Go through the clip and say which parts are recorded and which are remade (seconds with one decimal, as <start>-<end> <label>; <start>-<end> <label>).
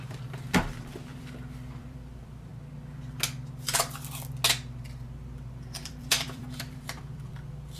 0.0-2.5 remade; 2.5-5.8 recorded; 5.8-7.8 remade